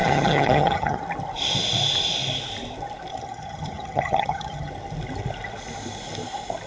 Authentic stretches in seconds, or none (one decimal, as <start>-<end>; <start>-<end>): 1.0-3.1; 4.7-6.7